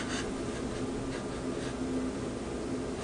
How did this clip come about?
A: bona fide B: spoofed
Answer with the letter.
A